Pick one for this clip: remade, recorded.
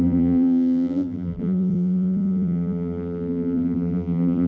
remade